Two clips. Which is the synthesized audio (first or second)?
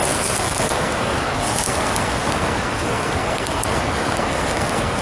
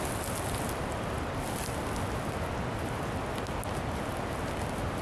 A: first